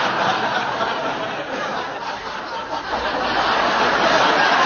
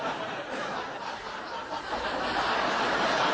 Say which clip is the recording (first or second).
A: first